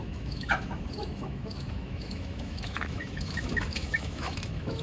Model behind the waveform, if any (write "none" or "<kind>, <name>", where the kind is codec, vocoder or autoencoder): autoencoder, DAC-VAE